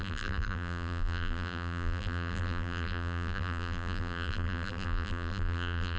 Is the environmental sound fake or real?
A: fake